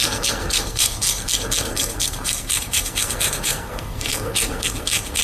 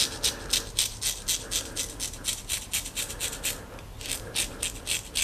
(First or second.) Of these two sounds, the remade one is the first